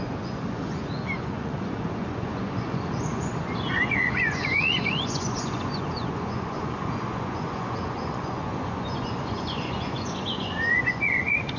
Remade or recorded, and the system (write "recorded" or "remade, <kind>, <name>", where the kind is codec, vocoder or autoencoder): remade, vocoder, Vocos